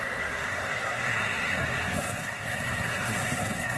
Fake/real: fake